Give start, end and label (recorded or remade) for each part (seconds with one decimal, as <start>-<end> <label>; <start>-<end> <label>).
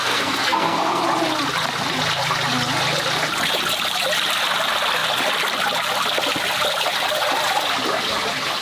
0.0-1.0 remade; 1.0-8.6 recorded